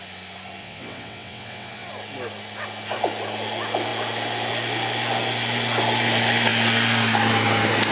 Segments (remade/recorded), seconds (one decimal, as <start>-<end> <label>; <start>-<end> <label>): 0.0-0.6 recorded; 0.6-1.9 remade; 1.9-7.9 recorded